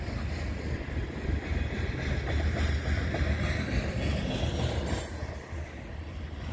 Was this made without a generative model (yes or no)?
yes